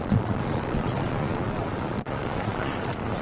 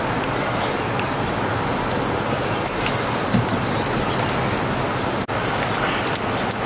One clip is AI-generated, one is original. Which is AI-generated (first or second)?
first